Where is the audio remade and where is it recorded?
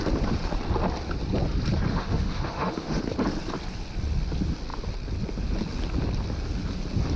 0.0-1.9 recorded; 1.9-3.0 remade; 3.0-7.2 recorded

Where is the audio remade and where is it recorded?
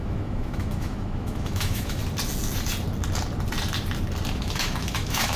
0.0-2.0 remade; 2.0-4.3 recorded; 4.3-5.4 remade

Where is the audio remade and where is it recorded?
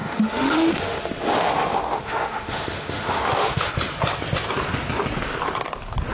0.0-3.7 remade; 3.7-6.1 recorded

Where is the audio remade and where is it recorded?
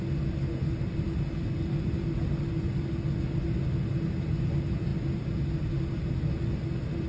0.0-7.1 recorded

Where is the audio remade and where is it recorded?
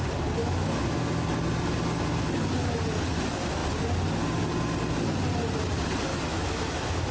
0.0-0.4 recorded; 0.4-1.1 remade; 1.1-6.1 recorded; 6.1-7.1 remade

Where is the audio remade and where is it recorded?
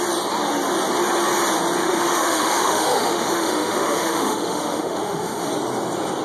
0.0-1.8 recorded; 1.8-5.5 remade; 5.5-6.2 recorded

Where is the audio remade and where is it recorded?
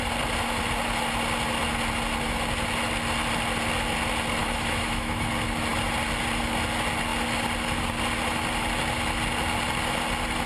0.0-4.4 recorded; 4.4-5.3 remade; 5.3-10.5 recorded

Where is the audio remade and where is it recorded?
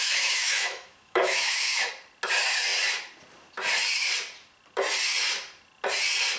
0.0-1.9 remade; 1.9-6.4 recorded